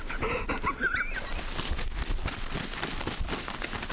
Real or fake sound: real